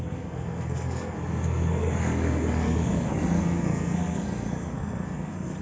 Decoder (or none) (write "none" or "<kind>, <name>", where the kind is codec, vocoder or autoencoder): codec, SNAC